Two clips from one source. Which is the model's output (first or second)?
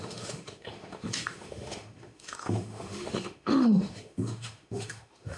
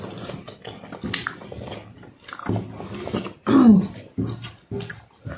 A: first